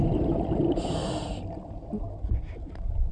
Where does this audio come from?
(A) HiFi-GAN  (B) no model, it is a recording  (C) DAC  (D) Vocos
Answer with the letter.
B